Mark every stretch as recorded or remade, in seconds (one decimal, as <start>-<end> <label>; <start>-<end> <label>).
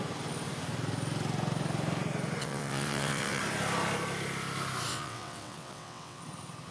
0.0-2.4 recorded; 2.4-3.4 remade; 3.4-4.9 recorded; 4.9-6.2 remade; 6.2-6.7 recorded